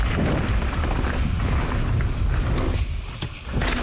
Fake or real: real